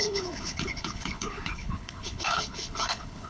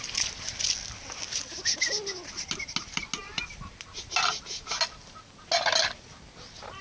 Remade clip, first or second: first